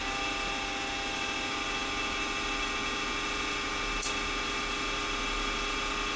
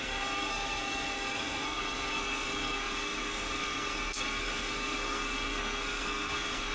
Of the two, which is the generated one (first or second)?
second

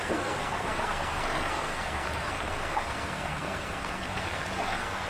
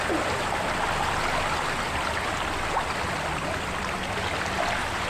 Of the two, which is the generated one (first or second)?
first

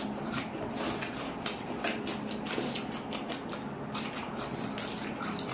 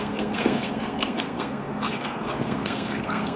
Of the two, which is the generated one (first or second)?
second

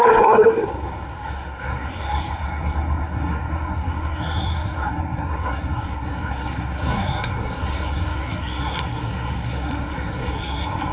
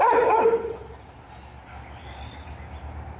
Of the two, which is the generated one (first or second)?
first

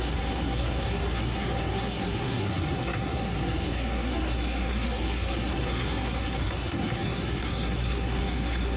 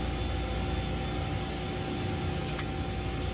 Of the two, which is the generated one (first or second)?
first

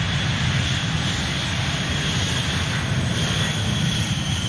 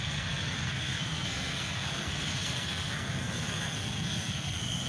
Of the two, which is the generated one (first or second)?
second